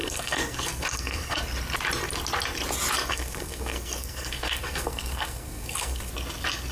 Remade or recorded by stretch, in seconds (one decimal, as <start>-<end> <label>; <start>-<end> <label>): 0.0-1.4 remade; 1.4-3.1 recorded; 3.1-6.1 remade; 6.1-6.7 recorded